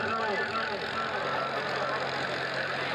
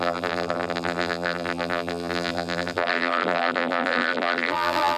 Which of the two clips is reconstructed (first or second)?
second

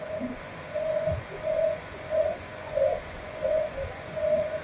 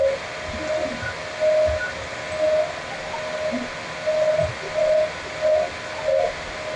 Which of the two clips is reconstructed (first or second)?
first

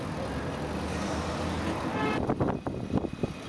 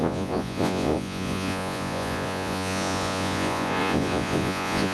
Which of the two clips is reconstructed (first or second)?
second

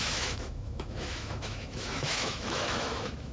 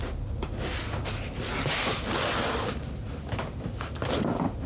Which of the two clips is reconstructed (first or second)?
first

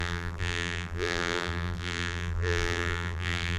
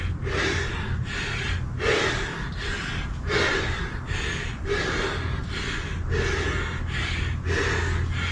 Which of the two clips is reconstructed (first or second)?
first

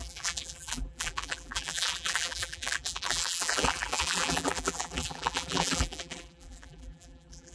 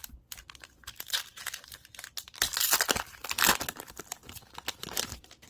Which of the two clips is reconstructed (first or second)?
first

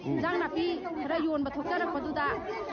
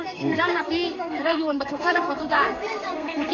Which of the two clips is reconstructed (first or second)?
second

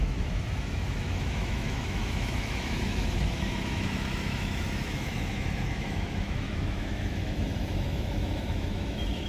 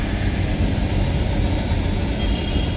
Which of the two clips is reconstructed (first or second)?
first